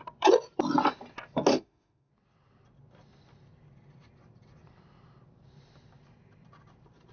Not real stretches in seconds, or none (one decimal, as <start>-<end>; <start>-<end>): 1.5-2.1